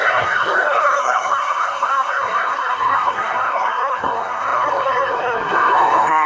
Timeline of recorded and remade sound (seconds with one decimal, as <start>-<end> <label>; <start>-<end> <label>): 0.0-6.3 remade